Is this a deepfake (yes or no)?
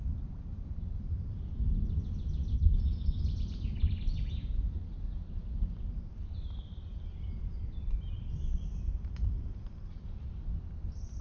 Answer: no